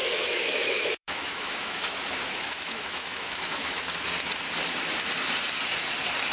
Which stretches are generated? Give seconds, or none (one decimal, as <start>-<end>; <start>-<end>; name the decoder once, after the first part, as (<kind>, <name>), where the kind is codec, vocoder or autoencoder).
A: 0.0-3.8 (autoencoder, DAC-VAE)